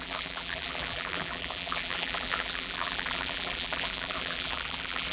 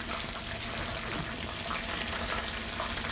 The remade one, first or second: first